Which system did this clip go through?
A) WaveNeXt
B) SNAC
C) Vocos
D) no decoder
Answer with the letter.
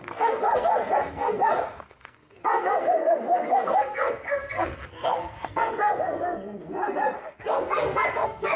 B